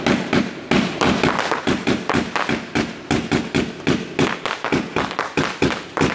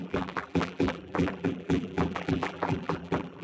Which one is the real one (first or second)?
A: first